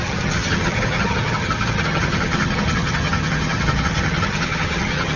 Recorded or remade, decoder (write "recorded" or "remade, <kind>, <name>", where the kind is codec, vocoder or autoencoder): remade, vocoder, HiFi-GAN